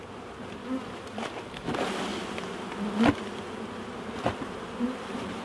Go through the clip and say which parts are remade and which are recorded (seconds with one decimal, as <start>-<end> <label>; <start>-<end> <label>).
0.0-5.4 recorded